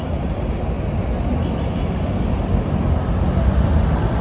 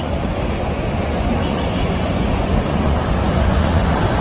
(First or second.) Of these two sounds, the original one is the first